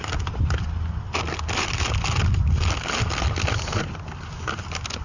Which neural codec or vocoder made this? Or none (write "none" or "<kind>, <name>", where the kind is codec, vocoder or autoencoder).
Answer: none